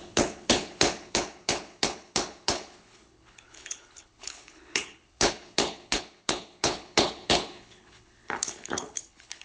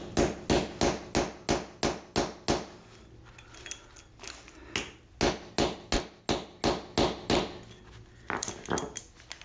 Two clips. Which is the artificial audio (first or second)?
first